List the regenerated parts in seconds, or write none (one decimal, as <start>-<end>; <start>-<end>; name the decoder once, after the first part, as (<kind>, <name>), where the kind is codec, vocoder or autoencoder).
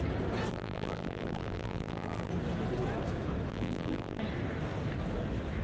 0.5-2.3 (vocoder, BigVGAN v2); 3.5-4.2